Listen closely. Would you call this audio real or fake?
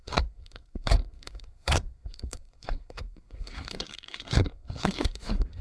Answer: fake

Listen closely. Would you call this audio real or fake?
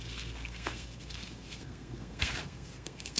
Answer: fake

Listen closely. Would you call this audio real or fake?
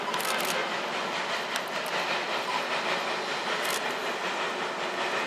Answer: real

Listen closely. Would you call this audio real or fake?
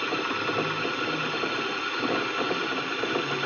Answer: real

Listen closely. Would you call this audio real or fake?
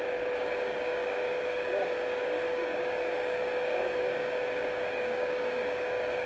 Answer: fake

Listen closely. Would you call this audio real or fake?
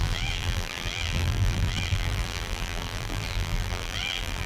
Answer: fake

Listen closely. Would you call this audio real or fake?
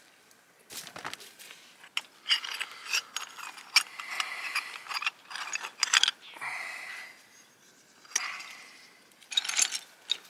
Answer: real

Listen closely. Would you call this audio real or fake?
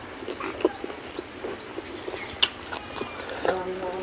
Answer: real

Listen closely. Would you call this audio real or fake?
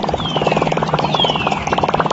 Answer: real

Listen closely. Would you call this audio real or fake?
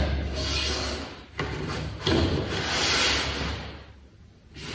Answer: real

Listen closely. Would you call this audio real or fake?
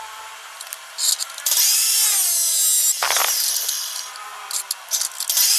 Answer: real